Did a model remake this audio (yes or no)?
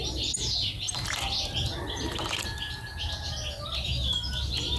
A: no